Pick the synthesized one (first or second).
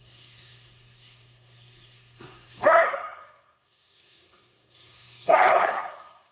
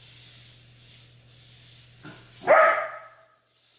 first